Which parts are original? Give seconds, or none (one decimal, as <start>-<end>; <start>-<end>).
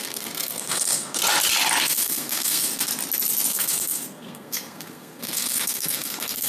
1.2-1.8; 2.9-3.5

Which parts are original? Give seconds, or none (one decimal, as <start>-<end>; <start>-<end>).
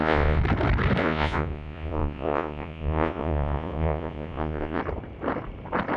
0.4-1.0; 4.8-6.0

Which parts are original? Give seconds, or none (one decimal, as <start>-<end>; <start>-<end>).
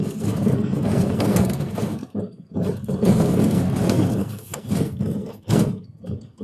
none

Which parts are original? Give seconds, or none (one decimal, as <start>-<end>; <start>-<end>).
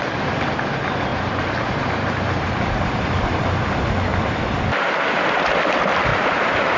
0.0-1.1; 3.3-6.1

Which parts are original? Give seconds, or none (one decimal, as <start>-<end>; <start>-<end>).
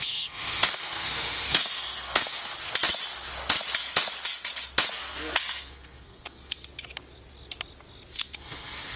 2.5-4.9; 6.6-8.1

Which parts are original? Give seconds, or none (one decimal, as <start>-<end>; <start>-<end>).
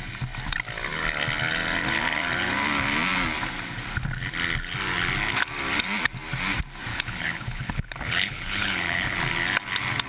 0.0-6.9; 9.2-10.1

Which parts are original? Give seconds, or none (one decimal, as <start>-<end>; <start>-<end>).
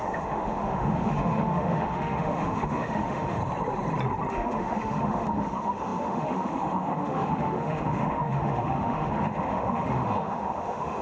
3.4-4.3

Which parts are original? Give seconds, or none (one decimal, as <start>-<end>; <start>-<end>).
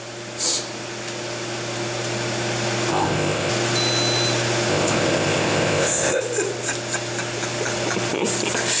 0.0-2.9; 3.5-4.7; 6.2-8.8